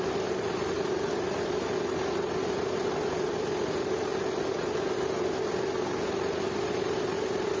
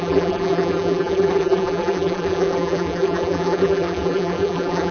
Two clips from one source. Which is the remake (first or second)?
second